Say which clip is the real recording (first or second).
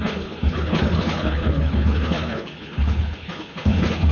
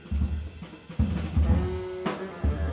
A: second